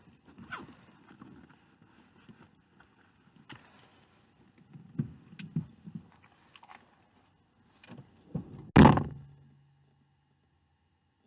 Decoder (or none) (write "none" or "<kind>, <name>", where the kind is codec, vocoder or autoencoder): none